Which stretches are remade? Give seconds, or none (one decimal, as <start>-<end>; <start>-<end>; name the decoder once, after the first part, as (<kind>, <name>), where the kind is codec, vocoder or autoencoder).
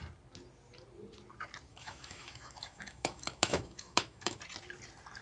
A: 1.7-4.4 (autoencoder, DAC-VAE)